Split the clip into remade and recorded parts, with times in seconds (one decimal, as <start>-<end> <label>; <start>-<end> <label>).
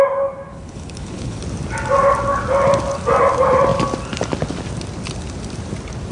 0.0-0.5 recorded; 0.5-1.4 remade; 1.4-6.1 recorded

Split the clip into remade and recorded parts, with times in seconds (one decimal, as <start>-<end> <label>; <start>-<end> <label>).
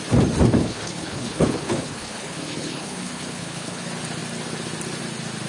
0.0-0.6 recorded; 0.6-3.8 remade; 3.8-5.5 recorded